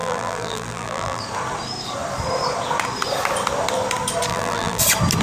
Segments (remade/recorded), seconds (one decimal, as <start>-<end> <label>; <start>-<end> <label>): 0.0-1.2 remade; 1.2-4.3 recorded; 4.3-4.8 remade; 4.8-5.2 recorded